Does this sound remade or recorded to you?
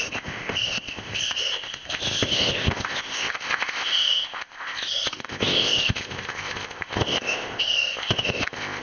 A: remade